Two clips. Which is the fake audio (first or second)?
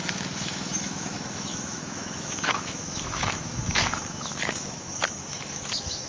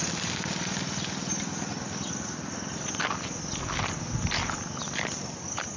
first